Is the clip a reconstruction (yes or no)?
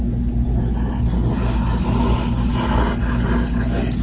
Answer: no